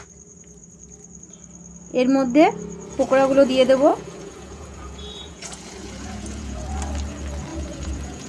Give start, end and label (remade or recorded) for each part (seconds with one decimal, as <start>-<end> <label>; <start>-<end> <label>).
0.0-3.9 recorded; 3.9-6.7 remade; 6.7-7.5 recorded; 7.5-8.3 remade